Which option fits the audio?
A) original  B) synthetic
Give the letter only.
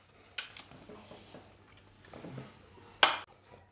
A